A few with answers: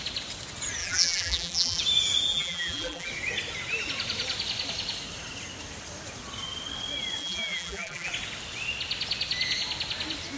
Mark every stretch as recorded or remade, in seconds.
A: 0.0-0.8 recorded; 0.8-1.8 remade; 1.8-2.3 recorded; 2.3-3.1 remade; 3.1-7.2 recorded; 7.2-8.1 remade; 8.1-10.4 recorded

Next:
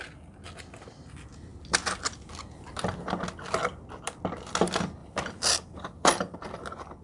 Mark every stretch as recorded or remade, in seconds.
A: 0.0-5.0 recorded; 5.0-6.2 remade; 6.2-7.0 recorded

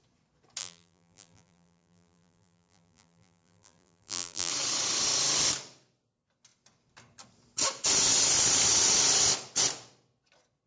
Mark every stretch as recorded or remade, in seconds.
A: 0.0-0.6 recorded; 0.6-4.5 remade; 4.5-10.7 recorded